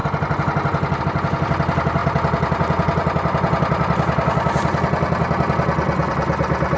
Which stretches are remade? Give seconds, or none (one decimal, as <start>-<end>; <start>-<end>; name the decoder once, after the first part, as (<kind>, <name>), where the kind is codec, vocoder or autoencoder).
none